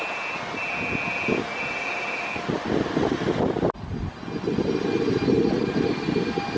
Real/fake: real